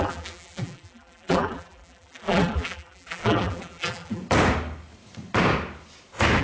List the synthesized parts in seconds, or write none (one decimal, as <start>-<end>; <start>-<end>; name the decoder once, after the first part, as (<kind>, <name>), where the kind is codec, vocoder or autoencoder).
0.0-4.2 (vocoder, BigVGAN v2)